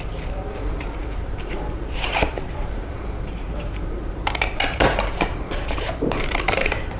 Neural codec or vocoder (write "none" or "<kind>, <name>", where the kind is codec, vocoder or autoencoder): vocoder, BigVGAN v2